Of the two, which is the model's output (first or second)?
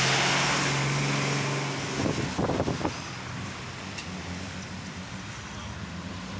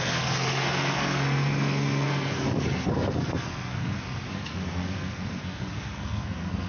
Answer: second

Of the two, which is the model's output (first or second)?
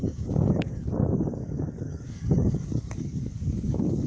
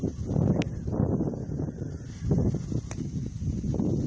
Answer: first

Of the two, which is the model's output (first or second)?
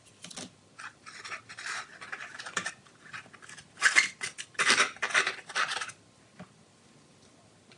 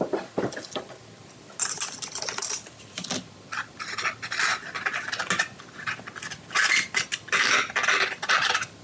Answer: first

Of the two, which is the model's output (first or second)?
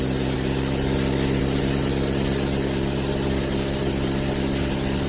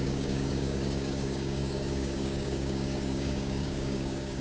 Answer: second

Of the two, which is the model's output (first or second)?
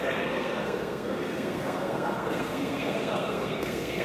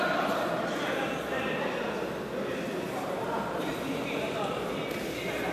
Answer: first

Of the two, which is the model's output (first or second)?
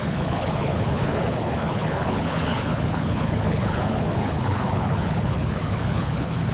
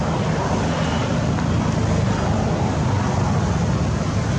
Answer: first